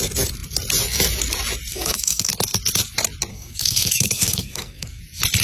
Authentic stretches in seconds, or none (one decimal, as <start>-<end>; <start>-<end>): 0.0-1.7; 2.3-3.3; 5.0-5.4